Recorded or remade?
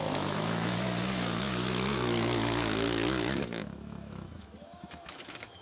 remade